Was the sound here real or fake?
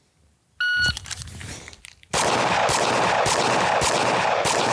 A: real